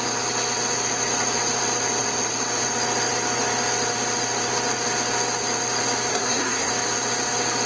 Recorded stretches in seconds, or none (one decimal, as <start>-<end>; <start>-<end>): 0.0-6.1; 6.7-7.7